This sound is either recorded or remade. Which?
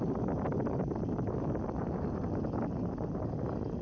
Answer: recorded